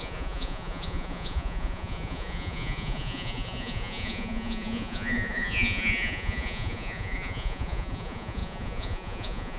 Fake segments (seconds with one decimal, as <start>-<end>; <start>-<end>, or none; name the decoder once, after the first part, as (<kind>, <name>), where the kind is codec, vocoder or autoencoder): 0.0-9.6 (vocoder, Vocos)